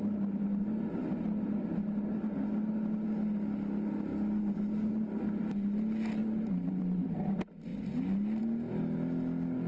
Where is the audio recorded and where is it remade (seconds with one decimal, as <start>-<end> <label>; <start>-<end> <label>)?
0.0-6.2 recorded; 6.2-7.0 remade; 7.0-9.7 recorded